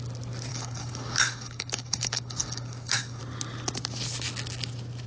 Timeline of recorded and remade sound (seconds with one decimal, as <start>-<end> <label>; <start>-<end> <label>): 0.0-0.5 recorded; 0.5-3.2 remade; 3.2-5.1 recorded